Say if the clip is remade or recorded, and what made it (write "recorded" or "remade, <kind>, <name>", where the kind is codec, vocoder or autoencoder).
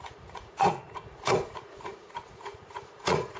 remade, vocoder, Vocos